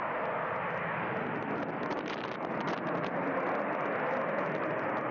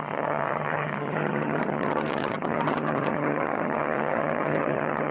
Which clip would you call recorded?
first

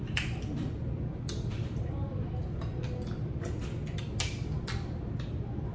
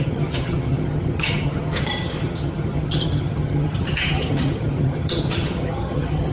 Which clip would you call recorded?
first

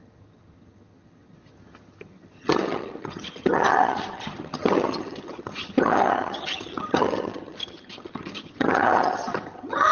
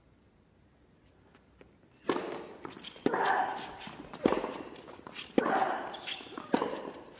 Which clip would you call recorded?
second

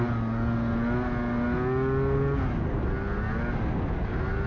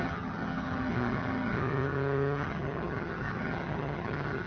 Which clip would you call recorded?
first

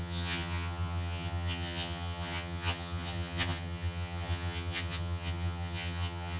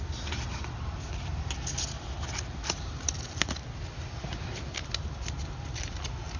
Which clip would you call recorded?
second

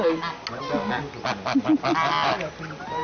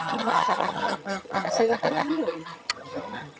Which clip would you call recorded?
first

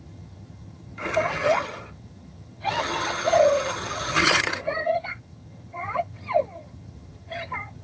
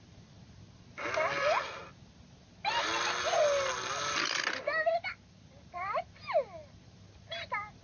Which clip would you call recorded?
second